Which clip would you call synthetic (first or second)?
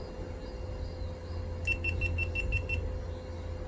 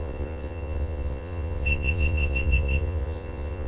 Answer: second